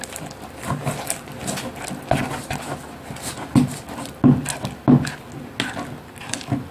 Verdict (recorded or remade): recorded